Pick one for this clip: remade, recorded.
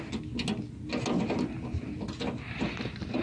recorded